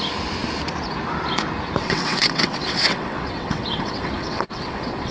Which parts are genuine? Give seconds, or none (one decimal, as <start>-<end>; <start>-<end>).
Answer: 0.0-1.8